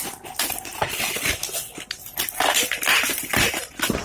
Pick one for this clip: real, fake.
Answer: real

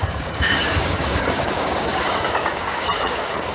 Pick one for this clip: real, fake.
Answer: fake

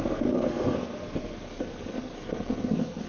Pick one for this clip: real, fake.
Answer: fake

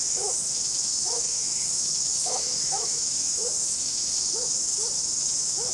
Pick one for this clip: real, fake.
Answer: fake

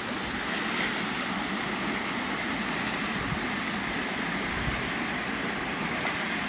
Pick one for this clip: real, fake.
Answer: real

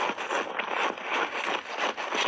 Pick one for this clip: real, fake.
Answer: real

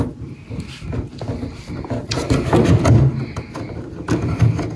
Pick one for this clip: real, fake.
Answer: real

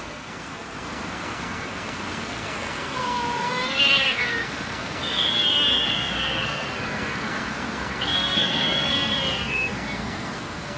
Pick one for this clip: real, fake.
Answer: fake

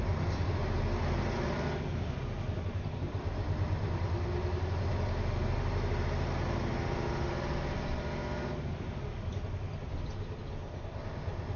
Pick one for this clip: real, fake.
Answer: real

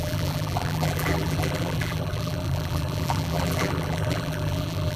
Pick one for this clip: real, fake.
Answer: fake